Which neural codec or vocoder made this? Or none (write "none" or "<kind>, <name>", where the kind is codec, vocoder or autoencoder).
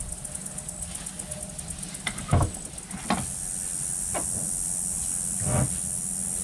none